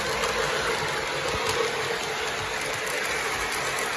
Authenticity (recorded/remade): recorded